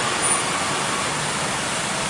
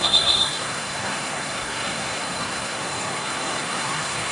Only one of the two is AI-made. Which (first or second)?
second